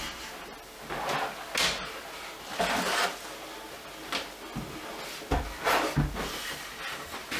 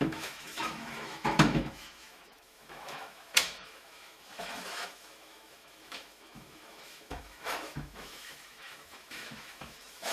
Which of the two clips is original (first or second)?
first